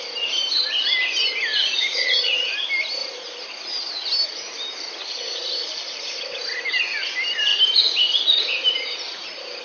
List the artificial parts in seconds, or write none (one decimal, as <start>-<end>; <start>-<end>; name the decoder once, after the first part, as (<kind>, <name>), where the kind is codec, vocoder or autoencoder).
1.5-2.5 (vocoder, BigVGAN v2); 3.0-6.0; 7.5-9.2